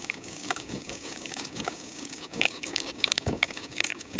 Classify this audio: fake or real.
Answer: fake